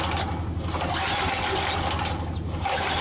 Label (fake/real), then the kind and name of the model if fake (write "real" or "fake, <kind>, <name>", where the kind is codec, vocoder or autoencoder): real